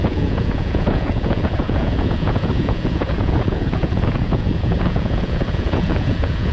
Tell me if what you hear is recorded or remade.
remade